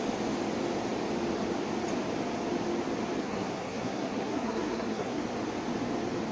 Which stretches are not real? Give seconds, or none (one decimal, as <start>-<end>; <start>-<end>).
3.2-5.2